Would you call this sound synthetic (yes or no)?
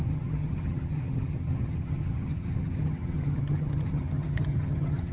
yes